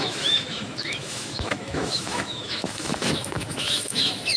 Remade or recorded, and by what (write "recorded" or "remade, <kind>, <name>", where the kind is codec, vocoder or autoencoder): remade, autoencoder, DAC-VAE